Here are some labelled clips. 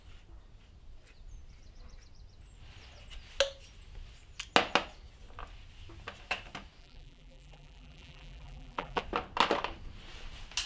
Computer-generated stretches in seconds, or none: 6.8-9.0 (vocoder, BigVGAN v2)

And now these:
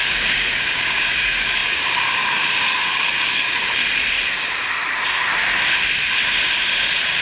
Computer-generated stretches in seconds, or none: 0.0-3.8 (codec, DAC)

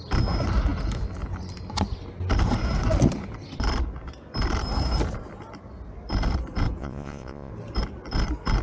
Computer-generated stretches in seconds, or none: 6.8-7.5 (vocoder, Vocos)

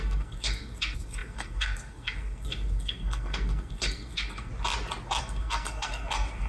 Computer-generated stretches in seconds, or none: 0.0-4.5 (codec, SNAC); 5.2-6.5